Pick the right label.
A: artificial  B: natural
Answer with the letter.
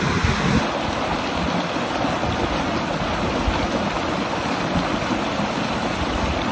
B